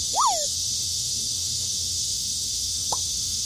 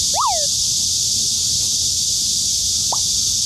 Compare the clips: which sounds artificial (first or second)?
first